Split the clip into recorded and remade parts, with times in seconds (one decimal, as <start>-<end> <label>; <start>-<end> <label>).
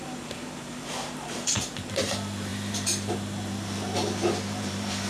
0.0-5.1 remade